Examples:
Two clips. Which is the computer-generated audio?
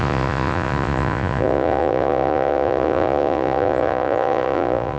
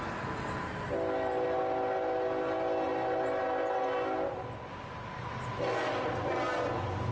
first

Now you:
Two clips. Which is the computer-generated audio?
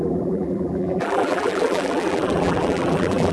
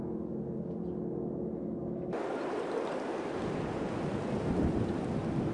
first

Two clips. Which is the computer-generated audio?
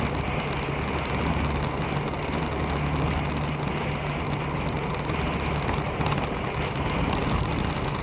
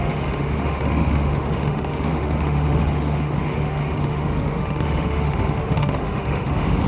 second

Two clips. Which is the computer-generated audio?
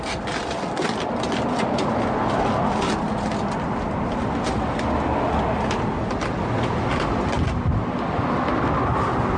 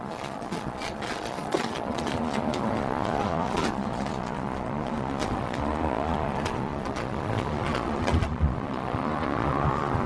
second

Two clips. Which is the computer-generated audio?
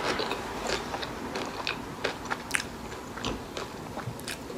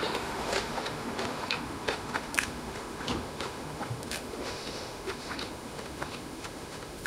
second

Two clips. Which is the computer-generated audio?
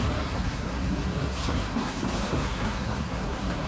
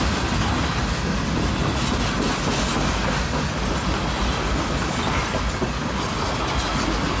first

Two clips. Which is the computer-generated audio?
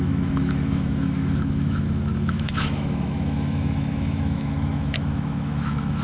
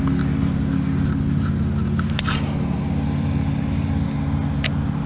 first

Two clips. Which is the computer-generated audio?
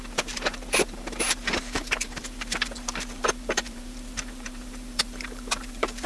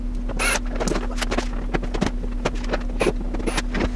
first